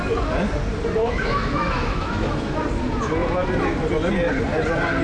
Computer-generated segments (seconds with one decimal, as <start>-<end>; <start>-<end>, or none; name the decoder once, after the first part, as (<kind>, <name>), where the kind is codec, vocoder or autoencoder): 1.0-2.6 (autoencoder, DAC-VAE)